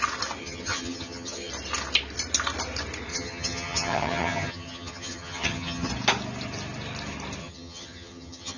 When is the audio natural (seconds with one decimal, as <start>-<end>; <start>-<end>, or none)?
0.0-0.4; 1.5-3.1; 5.9-7.4